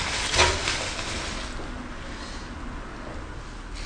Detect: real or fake real